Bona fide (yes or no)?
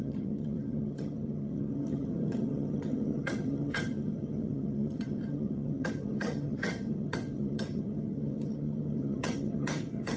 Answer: no